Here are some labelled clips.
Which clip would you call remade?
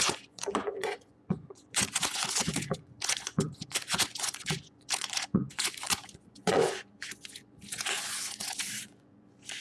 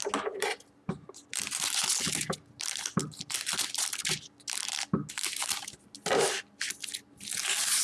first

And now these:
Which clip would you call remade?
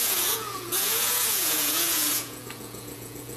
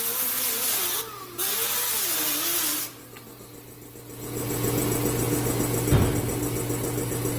first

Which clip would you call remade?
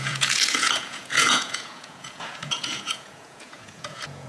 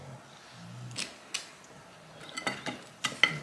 first